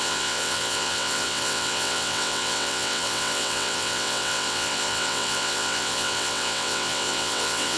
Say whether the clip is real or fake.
fake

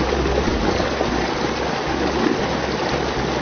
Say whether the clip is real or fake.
real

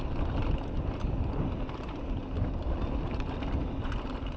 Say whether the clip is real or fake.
real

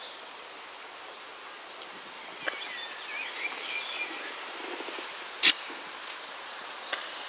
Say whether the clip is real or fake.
real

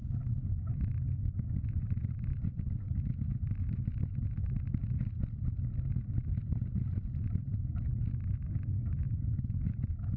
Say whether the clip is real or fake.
real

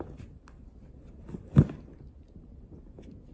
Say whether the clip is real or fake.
real